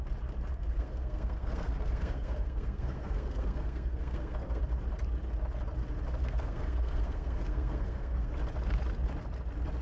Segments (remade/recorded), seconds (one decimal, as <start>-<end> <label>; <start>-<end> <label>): 0.0-0.5 recorded; 0.5-4.6 remade; 4.6-6.2 recorded; 6.2-8.3 remade; 8.3-9.8 recorded